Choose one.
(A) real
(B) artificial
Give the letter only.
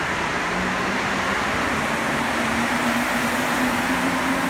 A